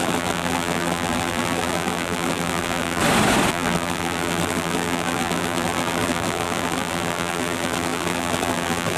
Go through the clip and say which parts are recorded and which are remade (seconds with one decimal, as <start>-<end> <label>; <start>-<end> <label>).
0.0-3.0 remade; 3.0-3.5 recorded; 3.5-9.0 remade